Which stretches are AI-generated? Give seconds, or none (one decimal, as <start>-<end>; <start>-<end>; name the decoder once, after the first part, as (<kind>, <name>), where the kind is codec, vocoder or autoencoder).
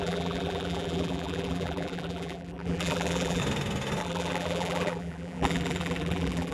0.0-3.4 (vocoder, BigVGAN v2); 4.0-6.5